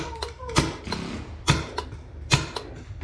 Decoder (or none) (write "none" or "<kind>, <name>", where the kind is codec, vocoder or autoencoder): none